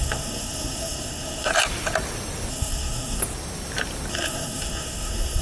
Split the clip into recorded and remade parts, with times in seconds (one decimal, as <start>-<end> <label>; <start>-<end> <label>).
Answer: 0.0-1.5 remade; 1.5-2.5 recorded; 2.5-3.2 remade; 3.2-4.1 recorded; 4.1-5.4 remade